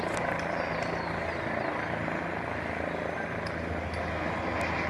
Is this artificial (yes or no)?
no